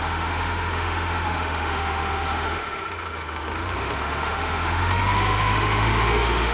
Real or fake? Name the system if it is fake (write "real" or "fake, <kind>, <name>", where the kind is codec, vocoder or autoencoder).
fake, autoencoder, DAC-VAE